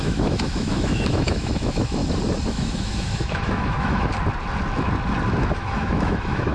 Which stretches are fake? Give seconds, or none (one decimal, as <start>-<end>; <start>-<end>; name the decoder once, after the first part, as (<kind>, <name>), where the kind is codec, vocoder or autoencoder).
0.0-2.0 (autoencoder, DAC-VAE); 2.5-4.1; 5.5-6.5